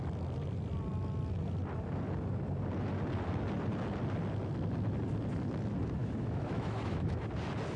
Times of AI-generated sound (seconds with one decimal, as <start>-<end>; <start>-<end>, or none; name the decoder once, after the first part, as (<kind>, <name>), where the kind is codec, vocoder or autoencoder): 6.0-7.2 (autoencoder, DAC-VAE)